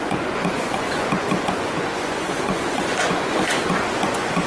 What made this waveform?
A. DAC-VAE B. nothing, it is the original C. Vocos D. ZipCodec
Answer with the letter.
C